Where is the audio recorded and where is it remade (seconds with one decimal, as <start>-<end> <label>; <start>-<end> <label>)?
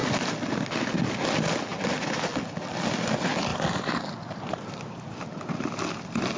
0.0-6.4 recorded